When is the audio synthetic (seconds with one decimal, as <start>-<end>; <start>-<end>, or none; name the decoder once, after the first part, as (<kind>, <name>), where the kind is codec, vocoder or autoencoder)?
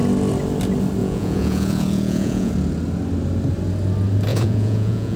1.0-2.5 (vocoder, Vocos); 4.3-5.2